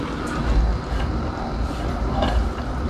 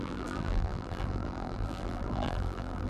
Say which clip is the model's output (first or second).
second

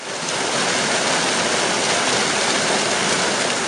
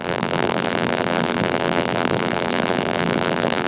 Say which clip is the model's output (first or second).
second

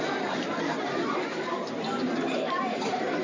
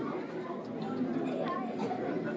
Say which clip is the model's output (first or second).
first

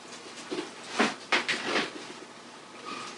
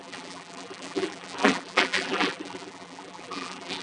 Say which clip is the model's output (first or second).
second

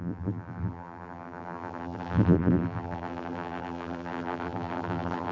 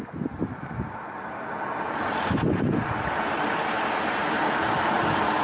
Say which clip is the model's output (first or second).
first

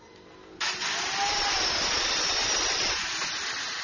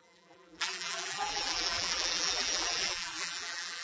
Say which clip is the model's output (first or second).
second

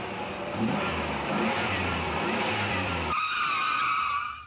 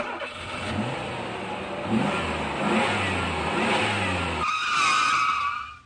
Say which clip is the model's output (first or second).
first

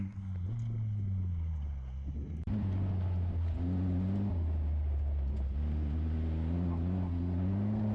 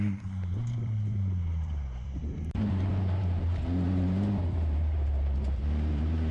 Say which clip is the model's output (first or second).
second